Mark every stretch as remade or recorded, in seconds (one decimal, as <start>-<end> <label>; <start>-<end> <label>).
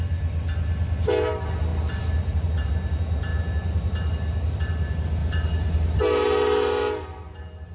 0.0-1.7 recorded; 1.7-2.7 remade; 2.7-5.2 recorded; 5.2-6.0 remade; 6.0-7.7 recorded